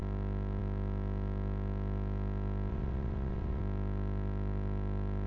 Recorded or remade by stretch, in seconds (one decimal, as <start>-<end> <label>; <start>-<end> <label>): 0.0-2.7 recorded; 2.7-3.6 remade; 3.6-5.3 recorded